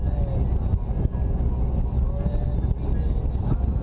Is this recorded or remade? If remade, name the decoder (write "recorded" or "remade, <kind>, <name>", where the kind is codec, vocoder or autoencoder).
recorded